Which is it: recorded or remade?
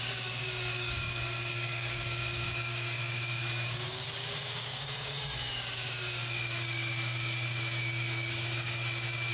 remade